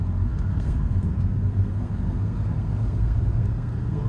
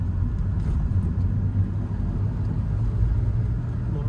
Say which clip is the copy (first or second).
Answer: first